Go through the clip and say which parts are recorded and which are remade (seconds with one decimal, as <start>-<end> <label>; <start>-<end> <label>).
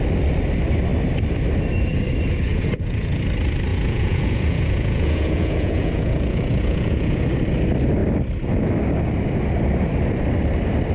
0.0-2.5 recorded; 2.5-3.2 remade; 3.2-3.7 recorded; 3.7-7.2 remade; 7.2-10.9 recorded